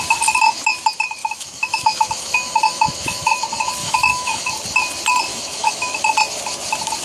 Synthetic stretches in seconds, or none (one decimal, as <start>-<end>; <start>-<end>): 1.2-3.4; 3.8-4.5; 5.3-6.0